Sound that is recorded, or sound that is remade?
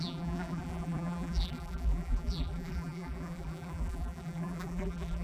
remade